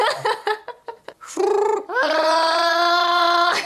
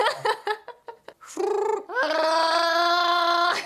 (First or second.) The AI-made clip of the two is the first